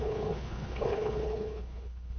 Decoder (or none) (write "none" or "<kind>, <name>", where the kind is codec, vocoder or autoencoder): codec, HILCodec